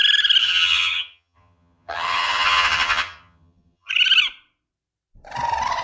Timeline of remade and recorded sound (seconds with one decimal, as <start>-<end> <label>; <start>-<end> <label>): 0.0-0.4 recorded; 0.4-3.9 remade; 3.9-5.8 recorded